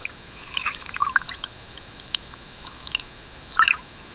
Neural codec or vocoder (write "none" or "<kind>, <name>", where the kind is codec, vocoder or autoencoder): autoencoder, DAC-VAE